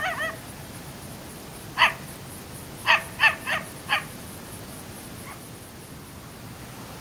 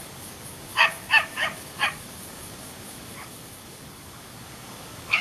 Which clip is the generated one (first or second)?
second